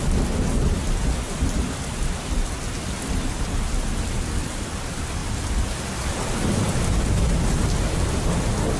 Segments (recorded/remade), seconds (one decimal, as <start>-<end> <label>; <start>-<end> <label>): 0.0-8.8 recorded